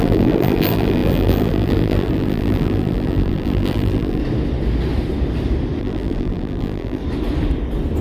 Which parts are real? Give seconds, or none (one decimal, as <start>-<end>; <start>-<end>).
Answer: 4.2-5.8; 7.0-8.0